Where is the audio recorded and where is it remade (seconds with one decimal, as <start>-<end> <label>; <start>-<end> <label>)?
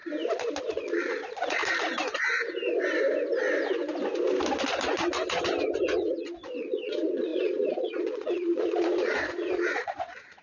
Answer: 0.0-0.6 recorded; 0.6-1.6 remade; 1.6-5.8 recorded; 5.8-10.4 remade